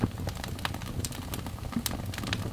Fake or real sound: real